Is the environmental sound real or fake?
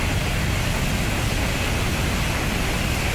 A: real